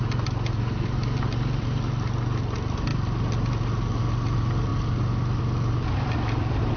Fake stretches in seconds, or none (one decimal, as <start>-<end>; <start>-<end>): none